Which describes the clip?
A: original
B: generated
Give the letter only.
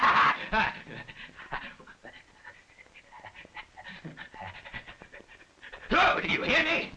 A